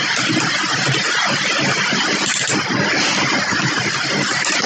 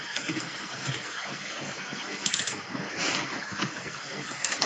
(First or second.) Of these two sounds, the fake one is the second